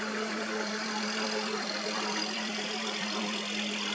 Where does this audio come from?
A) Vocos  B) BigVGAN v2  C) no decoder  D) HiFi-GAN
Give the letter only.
B